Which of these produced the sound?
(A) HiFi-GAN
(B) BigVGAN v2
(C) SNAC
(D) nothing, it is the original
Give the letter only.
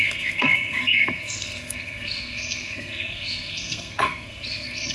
C